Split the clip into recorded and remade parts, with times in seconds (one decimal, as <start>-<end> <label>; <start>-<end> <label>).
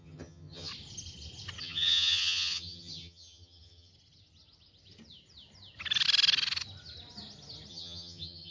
0.0-0.7 remade; 0.7-1.6 recorded; 1.6-3.9 remade; 3.9-7.7 recorded; 7.7-8.5 remade